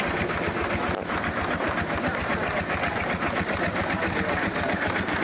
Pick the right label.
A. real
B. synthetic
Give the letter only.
A